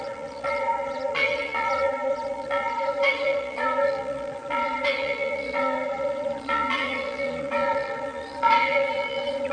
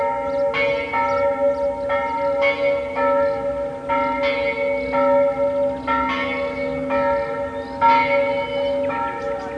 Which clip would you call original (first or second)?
second